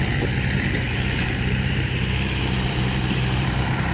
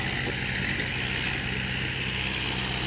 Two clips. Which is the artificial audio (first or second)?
first